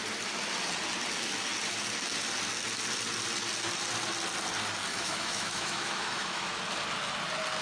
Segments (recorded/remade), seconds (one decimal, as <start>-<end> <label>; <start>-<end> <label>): 0.0-4.9 recorded; 4.9-6.6 remade; 6.6-7.6 recorded